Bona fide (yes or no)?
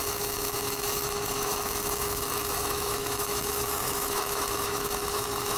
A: no